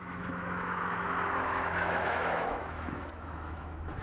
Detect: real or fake fake